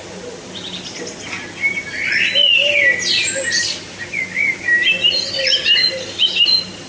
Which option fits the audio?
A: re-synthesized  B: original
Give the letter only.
B